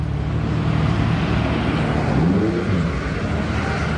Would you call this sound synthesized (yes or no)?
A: no